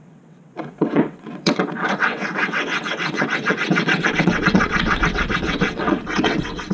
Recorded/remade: remade